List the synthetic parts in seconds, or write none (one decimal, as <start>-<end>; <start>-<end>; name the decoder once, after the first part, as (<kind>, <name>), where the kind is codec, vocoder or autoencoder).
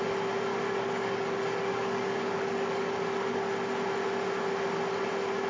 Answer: 0.5-3.5 (codec, DAC)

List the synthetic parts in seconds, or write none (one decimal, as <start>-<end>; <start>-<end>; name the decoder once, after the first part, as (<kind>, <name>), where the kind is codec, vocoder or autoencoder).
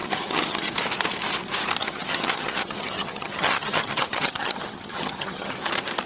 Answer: 0.0-0.7 (vocoder, HiFi-GAN); 1.8-5.5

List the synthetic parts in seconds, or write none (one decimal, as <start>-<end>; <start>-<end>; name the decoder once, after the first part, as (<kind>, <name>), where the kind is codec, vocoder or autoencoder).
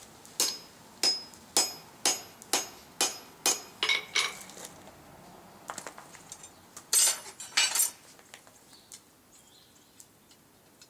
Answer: none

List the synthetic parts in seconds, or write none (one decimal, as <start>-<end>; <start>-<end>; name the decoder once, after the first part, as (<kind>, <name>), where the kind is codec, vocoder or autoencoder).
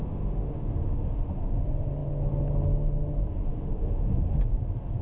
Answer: 0.0-1.6 (autoencoder, DAC-VAE); 3.5-4.4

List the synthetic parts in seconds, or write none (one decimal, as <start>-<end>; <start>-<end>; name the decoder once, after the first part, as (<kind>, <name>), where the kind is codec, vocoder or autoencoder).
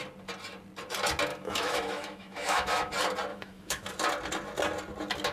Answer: 1.3-2.9 (autoencoder, DAC-VAE); 3.3-3.9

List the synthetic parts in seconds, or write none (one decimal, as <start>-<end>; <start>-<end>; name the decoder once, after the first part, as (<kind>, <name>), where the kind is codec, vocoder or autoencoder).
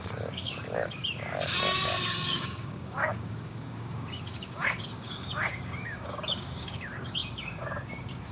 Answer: 0.0-8.3 (codec, DAC)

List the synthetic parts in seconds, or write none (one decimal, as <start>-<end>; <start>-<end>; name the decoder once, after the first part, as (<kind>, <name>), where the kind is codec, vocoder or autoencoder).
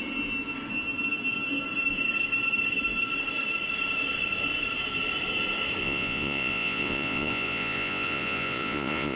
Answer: 5.8-9.2 (vocoder, Vocos)